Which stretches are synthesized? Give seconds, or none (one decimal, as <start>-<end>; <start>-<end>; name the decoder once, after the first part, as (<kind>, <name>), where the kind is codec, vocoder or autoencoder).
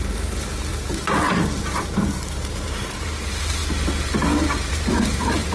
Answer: 0.0-0.7 (vocoder, BigVGAN v2); 1.6-3.6; 4.7-5.5